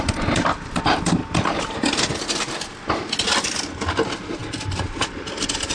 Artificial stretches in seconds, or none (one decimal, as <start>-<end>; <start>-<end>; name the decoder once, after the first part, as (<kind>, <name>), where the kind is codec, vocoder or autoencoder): none